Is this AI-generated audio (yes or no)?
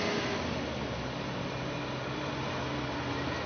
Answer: no